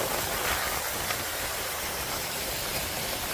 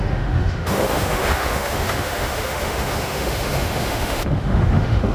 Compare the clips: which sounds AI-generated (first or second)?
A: second